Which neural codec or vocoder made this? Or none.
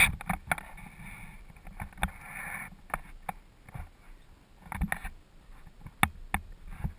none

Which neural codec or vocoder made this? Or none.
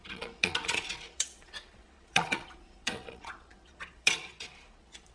vocoder, Vocos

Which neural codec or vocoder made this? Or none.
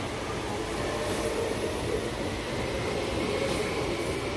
none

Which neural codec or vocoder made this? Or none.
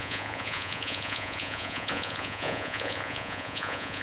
vocoder, Vocos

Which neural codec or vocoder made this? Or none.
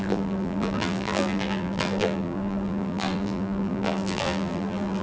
vocoder, BigVGAN v2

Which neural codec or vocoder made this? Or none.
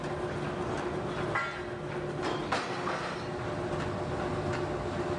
none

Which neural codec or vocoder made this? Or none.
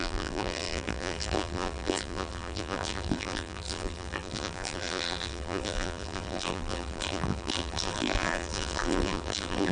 vocoder, BigVGAN v2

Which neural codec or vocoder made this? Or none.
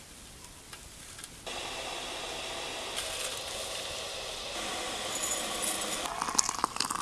none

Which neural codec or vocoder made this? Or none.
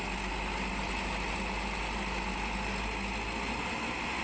none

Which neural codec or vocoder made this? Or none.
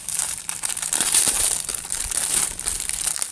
vocoder, BigVGAN v2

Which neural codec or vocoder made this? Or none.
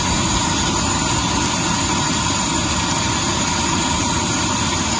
none